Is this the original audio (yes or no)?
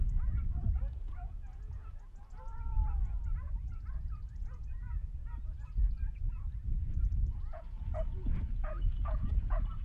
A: no